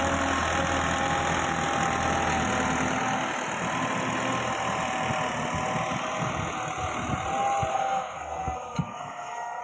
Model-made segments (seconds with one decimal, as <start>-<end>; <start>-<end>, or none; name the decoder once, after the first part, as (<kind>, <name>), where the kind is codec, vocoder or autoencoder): 7.7-9.6 (codec, SNAC)